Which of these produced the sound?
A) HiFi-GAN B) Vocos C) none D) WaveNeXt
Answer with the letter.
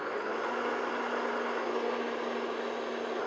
C